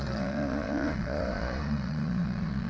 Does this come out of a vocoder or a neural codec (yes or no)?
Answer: yes